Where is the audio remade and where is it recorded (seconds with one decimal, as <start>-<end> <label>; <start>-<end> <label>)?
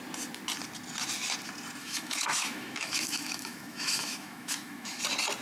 0.0-1.8 recorded; 1.8-5.0 remade; 5.0-5.4 recorded